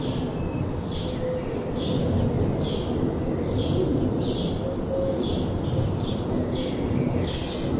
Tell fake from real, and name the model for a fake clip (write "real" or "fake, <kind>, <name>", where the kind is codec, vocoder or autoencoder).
real